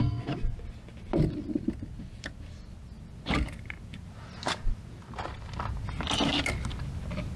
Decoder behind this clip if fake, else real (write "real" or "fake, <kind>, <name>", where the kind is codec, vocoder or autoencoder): real